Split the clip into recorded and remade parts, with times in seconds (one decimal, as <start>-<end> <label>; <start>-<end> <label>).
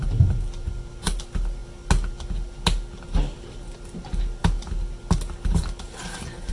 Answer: 0.0-6.5 recorded